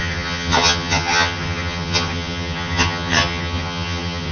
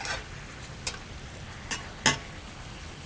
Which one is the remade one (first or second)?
first